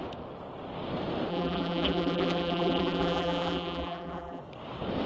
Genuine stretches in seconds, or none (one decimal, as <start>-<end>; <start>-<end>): 0.0-1.3; 4.4-5.1